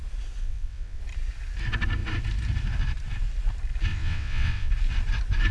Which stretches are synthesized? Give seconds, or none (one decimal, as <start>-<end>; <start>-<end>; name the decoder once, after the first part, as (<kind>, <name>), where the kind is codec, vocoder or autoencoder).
0.4-1.0 (vocoder, WaveNeXt); 3.9-4.7